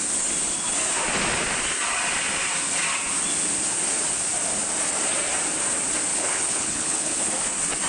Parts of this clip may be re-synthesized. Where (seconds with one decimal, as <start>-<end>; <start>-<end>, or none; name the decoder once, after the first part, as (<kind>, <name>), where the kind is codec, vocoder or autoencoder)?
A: 6.1-7.3 (codec, HILCodec)